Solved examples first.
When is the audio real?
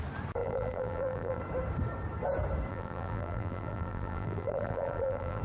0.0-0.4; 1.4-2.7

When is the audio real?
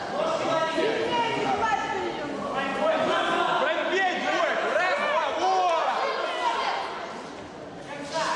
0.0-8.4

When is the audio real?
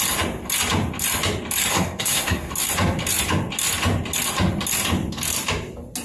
0.0-1.7; 2.5-6.0